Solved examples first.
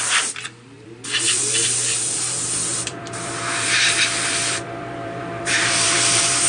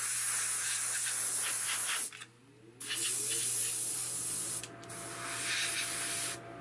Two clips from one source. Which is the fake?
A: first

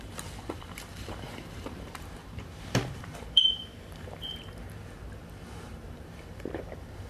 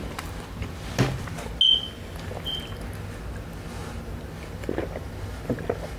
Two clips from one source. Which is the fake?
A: first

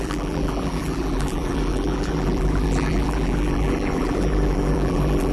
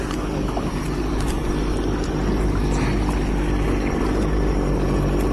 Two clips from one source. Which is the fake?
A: first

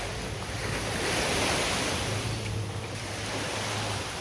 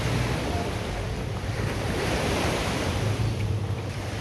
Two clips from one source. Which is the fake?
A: second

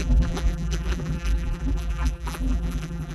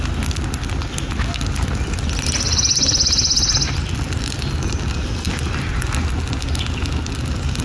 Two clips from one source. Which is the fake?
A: first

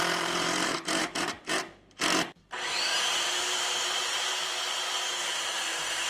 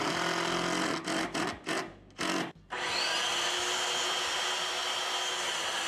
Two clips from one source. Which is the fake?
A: first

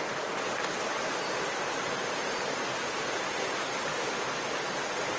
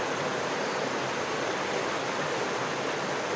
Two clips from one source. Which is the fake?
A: first